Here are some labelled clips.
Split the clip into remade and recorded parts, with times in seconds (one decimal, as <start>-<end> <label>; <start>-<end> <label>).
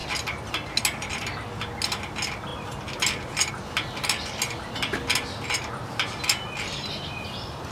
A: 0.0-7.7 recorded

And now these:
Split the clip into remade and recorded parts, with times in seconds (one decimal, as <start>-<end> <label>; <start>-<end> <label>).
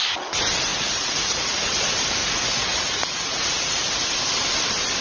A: 0.0-0.7 recorded; 0.7-1.8 remade; 1.8-2.2 recorded; 2.2-3.8 remade; 3.8-5.0 recorded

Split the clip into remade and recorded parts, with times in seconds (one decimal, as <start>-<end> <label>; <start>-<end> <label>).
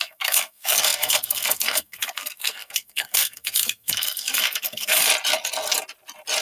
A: 0.0-5.1 remade; 5.1-6.4 recorded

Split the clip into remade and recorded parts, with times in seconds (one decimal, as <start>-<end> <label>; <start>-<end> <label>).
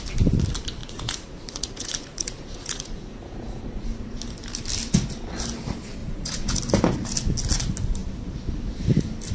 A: 0.0-0.8 recorded; 0.8-4.2 remade; 4.2-6.0 recorded; 6.0-6.6 remade; 6.6-9.3 recorded